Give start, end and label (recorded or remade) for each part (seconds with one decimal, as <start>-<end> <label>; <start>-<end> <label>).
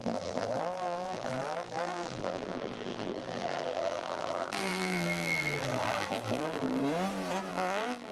0.0-6.8 remade; 6.8-7.5 recorded; 7.5-8.1 remade